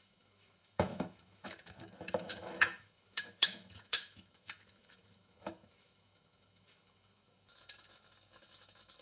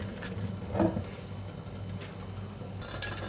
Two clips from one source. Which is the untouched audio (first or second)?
second